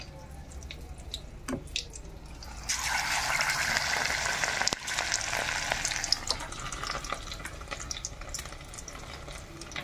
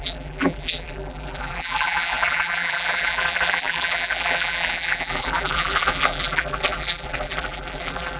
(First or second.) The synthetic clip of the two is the second